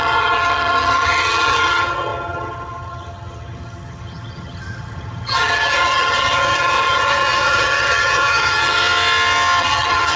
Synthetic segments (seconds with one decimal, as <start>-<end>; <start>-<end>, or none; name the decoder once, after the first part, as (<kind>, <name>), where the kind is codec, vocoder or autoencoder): 0.0-8.8 (vocoder, HiFi-GAN); 9.6-10.2